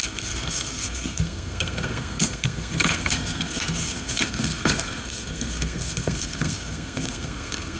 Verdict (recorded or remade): remade